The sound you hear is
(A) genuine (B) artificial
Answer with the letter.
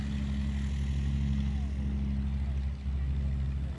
A